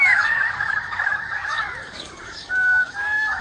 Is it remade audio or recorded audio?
remade